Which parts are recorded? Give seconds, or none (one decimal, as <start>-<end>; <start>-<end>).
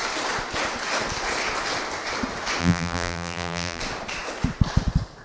0.0-2.6; 3.8-5.2